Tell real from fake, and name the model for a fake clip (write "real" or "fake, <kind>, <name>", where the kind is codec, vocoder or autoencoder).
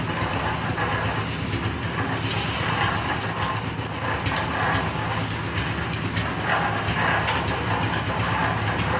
real